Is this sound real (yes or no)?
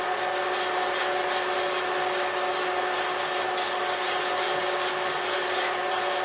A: yes